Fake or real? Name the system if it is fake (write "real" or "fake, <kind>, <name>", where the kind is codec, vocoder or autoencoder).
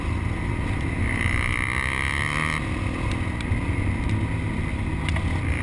real